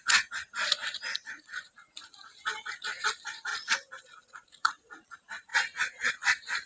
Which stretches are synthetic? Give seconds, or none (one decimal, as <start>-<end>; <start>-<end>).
0.0-0.8; 1.3-3.5; 4.2-6.7